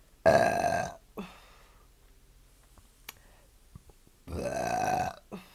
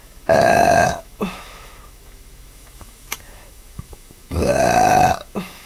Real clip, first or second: first